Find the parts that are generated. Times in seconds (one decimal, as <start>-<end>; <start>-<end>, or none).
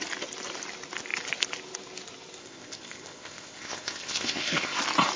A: 2.4-4.8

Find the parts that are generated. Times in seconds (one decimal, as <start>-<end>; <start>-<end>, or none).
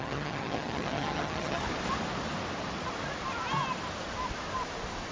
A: 0.0-1.6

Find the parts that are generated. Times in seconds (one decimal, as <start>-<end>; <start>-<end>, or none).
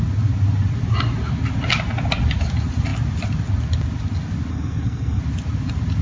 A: 4.5-5.2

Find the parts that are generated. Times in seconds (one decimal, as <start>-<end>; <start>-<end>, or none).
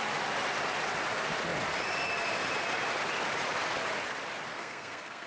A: 4.5-5.3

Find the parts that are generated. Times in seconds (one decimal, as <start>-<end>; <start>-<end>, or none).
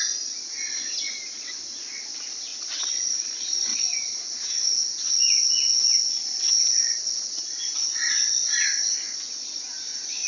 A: 2.5-3.3; 3.7-8.8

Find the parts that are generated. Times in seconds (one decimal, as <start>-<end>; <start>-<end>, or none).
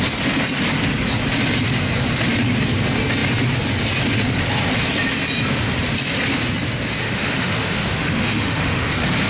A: 7.0-8.9